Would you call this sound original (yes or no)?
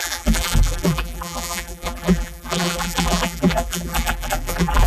no